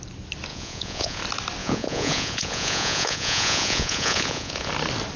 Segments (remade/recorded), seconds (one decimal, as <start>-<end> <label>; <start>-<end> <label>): 0.0-0.5 recorded; 0.5-1.2 remade; 1.2-1.6 recorded; 1.6-4.7 remade; 4.7-5.2 recorded